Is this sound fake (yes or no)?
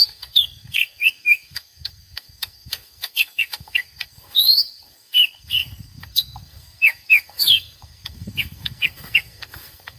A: yes